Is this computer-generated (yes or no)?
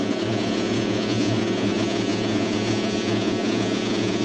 yes